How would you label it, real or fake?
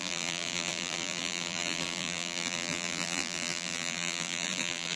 fake